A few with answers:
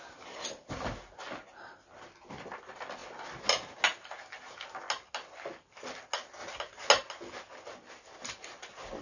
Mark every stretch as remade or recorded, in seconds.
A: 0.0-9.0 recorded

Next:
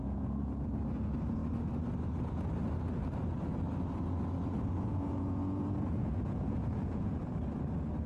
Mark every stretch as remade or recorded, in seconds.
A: 0.0-1.4 remade; 1.4-4.8 recorded; 4.8-7.2 remade; 7.2-8.1 recorded

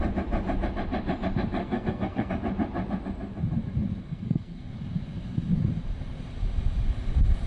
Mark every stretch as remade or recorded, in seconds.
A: 0.0-1.6 recorded; 1.6-2.3 remade; 2.3-4.0 recorded; 4.0-4.7 remade; 4.7-7.5 recorded

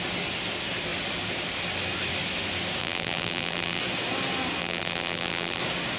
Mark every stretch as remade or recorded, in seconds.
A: 0.0-2.8 recorded; 2.8-3.8 remade; 3.8-4.6 recorded; 4.6-5.6 remade; 5.6-6.0 recorded

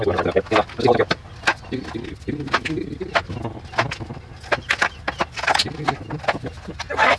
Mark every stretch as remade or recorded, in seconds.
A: 0.0-7.2 recorded

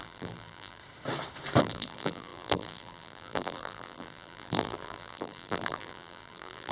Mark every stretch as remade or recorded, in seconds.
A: 0.0-0.8 remade; 0.8-1.6 recorded; 1.6-6.7 remade

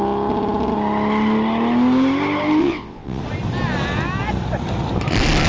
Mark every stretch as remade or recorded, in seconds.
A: 0.0-2.6 recorded; 2.6-3.2 remade; 3.2-5.5 recorded

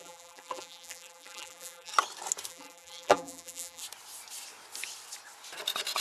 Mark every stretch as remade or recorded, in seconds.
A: 0.0-1.9 remade; 1.9-2.5 recorded; 2.5-3.8 remade; 3.8-6.0 recorded